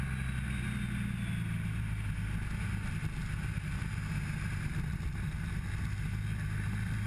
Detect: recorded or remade recorded